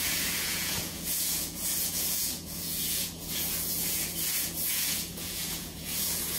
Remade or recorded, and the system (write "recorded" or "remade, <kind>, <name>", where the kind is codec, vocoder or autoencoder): remade, vocoder, Vocos